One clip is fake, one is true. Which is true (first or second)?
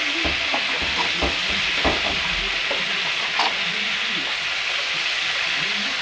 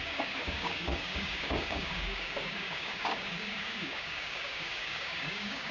first